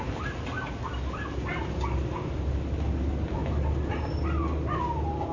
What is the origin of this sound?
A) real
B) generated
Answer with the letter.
A